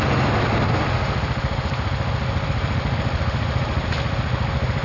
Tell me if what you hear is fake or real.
real